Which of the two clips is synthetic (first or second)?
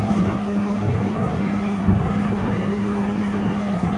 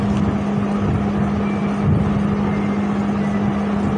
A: first